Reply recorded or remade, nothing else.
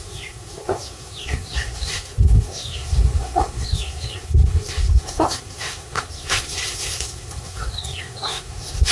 remade